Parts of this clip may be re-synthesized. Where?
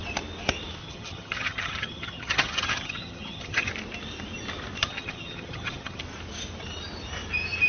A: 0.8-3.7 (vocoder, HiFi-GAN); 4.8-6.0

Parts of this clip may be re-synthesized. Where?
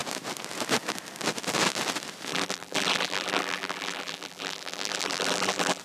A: 2.3-5.8 (vocoder, BigVGAN v2)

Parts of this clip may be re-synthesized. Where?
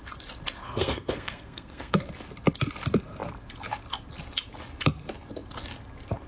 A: 0.6-2.0 (codec, SNAC)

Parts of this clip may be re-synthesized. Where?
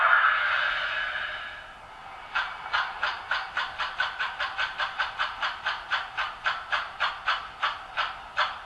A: 2.0-7.1 (vocoder, BigVGAN v2)